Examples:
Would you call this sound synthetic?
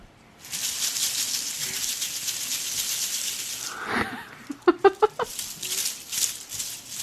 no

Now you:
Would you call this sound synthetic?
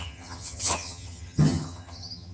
yes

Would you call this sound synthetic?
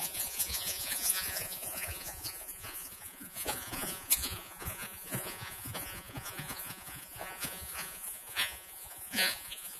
yes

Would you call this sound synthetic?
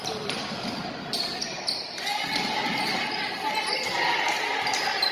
no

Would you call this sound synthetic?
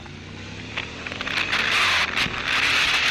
no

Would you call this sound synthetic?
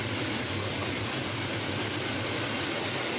no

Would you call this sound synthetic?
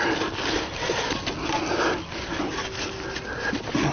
no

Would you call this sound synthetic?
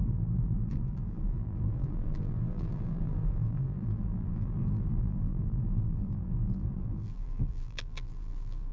yes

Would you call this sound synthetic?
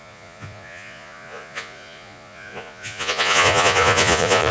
yes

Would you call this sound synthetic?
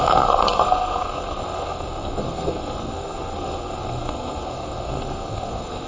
yes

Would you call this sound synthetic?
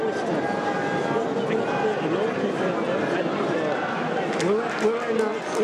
no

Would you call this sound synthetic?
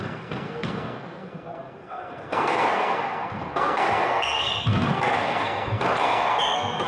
yes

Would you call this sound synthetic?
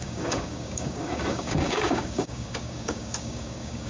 yes